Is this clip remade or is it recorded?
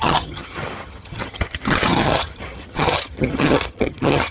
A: remade